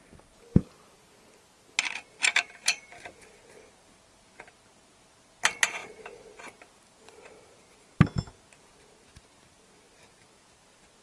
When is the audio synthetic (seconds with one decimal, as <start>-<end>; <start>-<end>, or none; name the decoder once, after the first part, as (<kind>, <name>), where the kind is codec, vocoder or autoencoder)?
2.3-2.8 (vocoder, BigVGAN v2)